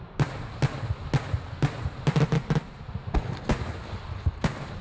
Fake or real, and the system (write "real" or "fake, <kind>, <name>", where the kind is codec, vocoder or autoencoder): real